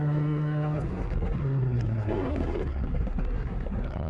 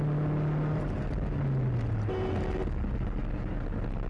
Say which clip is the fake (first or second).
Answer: first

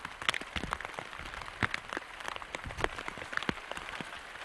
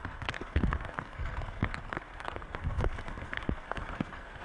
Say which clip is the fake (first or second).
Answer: second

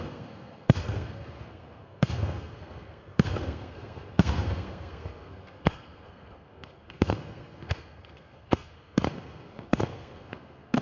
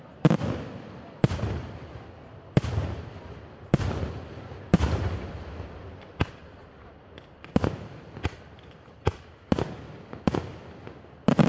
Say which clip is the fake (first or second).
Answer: first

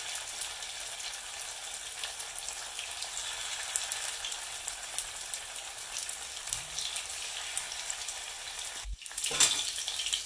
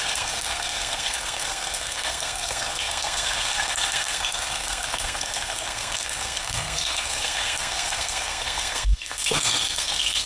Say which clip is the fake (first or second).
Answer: second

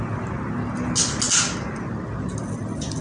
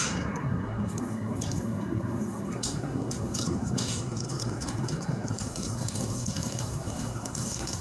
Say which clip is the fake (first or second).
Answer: second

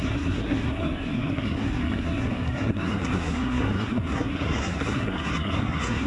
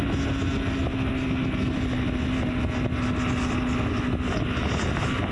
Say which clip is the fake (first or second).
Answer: first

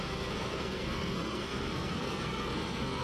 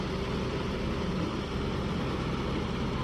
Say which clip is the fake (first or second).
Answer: first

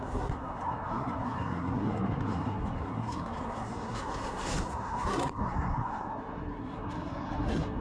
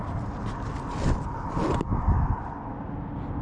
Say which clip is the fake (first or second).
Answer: first